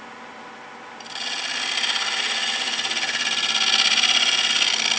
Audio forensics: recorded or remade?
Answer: recorded